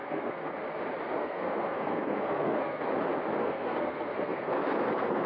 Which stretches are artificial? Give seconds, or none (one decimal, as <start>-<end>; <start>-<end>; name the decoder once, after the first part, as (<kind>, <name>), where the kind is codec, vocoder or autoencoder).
0.0-0.5 (codec, SNAC); 1.2-2.9; 3.4-5.3